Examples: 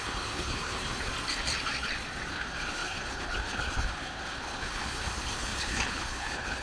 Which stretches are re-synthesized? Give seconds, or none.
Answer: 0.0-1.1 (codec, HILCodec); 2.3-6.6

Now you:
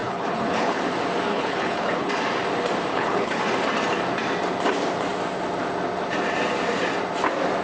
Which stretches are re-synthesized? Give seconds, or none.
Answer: 0.0-0.8 (codec, HILCodec); 1.3-2.1; 2.9-3.4

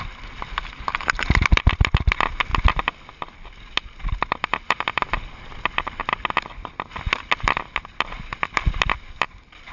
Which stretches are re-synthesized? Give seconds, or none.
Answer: none